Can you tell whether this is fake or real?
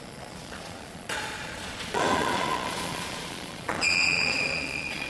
fake